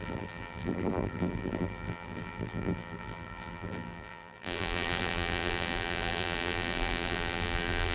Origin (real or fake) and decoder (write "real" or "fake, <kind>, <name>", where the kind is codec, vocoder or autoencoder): fake, vocoder, BigVGAN v2